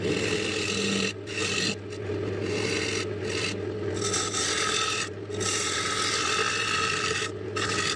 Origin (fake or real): real